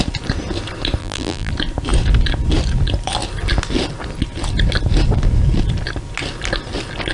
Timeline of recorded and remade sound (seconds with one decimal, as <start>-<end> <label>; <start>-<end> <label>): 0.0-1.0 recorded; 1.0-1.5 remade; 1.5-7.1 recorded